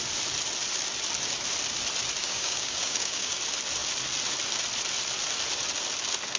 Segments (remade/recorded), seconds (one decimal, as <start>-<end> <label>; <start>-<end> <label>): 0.0-2.2 recorded; 2.2-3.4 remade; 3.4-6.4 recorded